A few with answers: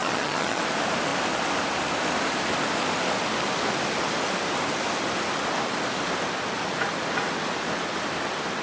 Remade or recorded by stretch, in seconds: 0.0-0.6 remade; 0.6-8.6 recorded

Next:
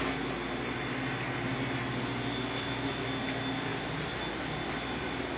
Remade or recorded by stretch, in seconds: 0.0-5.4 recorded

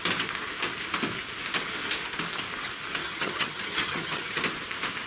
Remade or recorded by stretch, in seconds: 0.0-3.0 recorded; 3.0-4.4 remade; 4.4-5.1 recorded

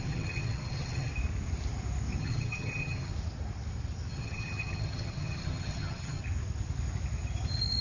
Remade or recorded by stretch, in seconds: 0.0-1.1 remade; 1.1-2.2 recorded; 2.2-3.1 remade; 3.1-4.1 recorded; 4.1-6.2 remade; 6.2-7.8 recorded

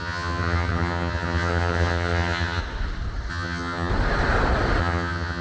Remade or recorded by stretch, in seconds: 0.0-2.6 remade; 2.6-3.3 recorded; 3.3-3.9 remade; 3.9-4.8 recorded; 4.8-5.4 remade